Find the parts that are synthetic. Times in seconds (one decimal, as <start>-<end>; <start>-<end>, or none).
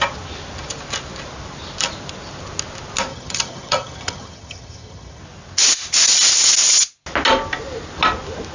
3.1-5.2